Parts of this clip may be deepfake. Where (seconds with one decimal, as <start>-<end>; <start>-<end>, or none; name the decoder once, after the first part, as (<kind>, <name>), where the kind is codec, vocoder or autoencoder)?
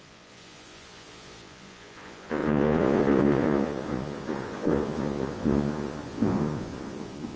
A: 0.0-7.4 (vocoder, Vocos)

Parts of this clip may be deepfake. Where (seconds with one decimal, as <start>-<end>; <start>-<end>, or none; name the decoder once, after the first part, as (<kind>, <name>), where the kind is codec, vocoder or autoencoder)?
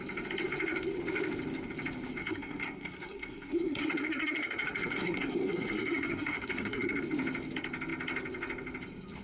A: 2.2-7.0 (codec, SNAC)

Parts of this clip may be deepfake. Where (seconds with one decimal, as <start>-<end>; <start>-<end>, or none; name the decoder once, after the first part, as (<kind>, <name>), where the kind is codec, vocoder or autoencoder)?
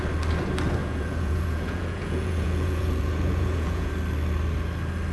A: 0.8-3.9 (vocoder, Vocos)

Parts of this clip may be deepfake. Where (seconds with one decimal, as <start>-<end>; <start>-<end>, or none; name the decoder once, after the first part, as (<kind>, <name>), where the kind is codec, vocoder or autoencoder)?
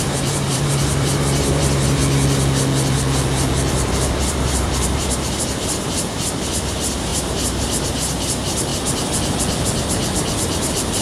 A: 0.0-2.0 (vocoder, BigVGAN v2); 3.7-8.7; 9.8-11.0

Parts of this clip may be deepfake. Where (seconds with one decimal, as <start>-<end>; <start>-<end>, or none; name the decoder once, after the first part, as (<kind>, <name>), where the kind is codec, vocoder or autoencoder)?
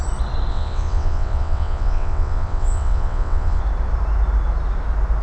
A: 0.5-3.6 (vocoder, WaveNeXt)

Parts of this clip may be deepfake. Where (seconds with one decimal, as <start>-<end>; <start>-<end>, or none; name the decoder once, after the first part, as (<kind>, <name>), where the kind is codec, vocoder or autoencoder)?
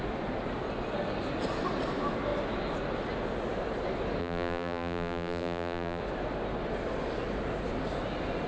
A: 4.2-6.0 (vocoder, BigVGAN v2)